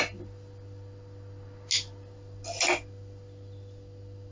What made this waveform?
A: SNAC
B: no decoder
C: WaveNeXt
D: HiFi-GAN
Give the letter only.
B